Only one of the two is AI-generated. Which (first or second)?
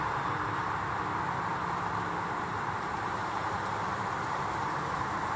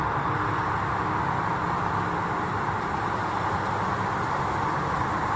first